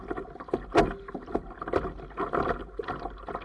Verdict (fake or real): real